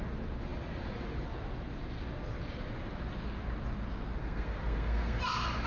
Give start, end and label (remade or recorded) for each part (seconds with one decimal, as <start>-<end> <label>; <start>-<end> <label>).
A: 0.0-4.2 recorded; 4.2-5.2 remade; 5.2-5.7 recorded